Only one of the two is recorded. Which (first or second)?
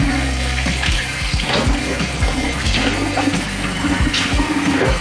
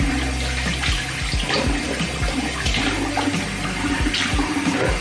second